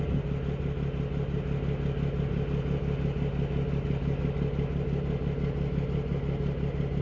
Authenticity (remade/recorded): recorded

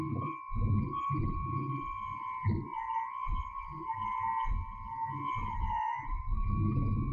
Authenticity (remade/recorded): recorded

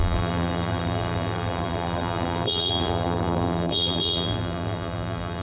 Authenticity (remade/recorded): remade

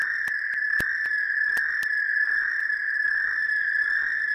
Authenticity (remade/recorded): remade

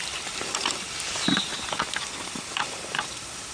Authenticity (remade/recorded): remade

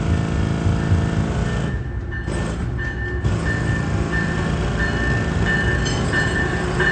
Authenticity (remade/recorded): recorded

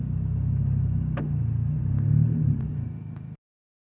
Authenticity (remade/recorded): recorded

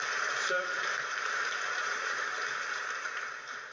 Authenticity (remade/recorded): remade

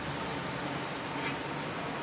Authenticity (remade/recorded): recorded